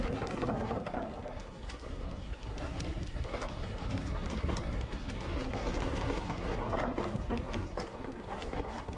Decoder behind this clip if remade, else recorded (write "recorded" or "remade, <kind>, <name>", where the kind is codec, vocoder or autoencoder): remade, codec, SNAC